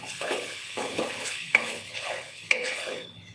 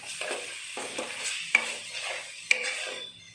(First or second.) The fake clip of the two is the first